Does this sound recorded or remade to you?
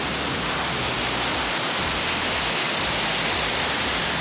recorded